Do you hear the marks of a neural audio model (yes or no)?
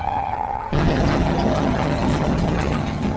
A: yes